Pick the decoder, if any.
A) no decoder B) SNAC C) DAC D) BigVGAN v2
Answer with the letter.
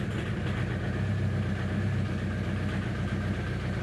A